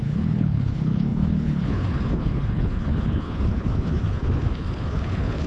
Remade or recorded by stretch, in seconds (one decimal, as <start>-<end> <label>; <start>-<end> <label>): 0.0-5.5 remade